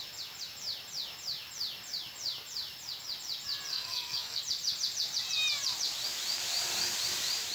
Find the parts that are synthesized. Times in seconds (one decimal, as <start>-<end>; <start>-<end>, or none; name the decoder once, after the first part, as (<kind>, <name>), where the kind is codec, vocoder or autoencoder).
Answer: 3.7-4.4 (codec, SNAC)